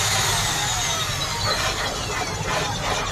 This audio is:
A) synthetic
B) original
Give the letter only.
B